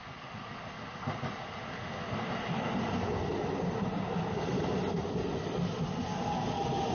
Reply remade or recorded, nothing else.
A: recorded